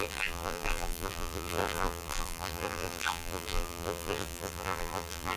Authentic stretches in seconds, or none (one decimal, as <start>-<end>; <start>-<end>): none